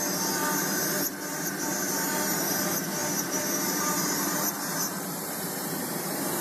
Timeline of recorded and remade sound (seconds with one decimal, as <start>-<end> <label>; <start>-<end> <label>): 0.0-6.4 remade